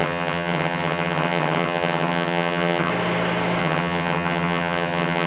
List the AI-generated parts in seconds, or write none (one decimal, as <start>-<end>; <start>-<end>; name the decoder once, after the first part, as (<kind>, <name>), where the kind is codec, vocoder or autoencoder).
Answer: 0.0-2.9 (vocoder, HiFi-GAN); 3.6-5.3